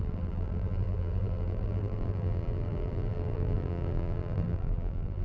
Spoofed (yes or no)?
yes